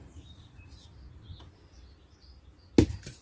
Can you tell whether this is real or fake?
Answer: real